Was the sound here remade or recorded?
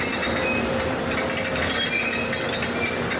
recorded